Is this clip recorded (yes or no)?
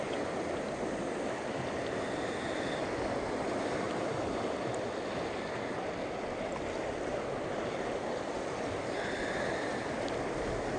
yes